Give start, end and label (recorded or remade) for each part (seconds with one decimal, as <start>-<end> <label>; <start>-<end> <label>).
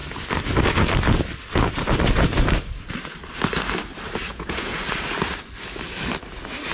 0.0-4.3 recorded; 4.3-4.8 remade; 4.8-6.7 recorded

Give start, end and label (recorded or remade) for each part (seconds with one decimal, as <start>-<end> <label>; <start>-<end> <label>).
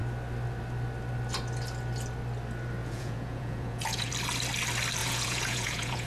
0.0-2.8 recorded; 2.8-4.1 remade; 4.1-5.0 recorded; 5.0-6.1 remade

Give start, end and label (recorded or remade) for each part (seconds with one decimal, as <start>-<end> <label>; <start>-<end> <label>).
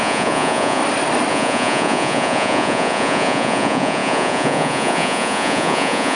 0.0-0.8 remade; 0.8-1.3 recorded; 1.3-6.2 remade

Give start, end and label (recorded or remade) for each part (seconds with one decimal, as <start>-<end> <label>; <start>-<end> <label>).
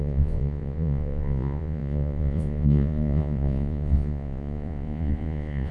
0.0-5.7 remade